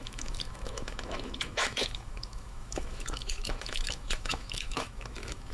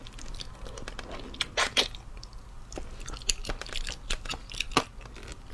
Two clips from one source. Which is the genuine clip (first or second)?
second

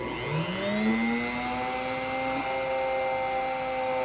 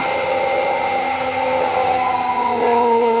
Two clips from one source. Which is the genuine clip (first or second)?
first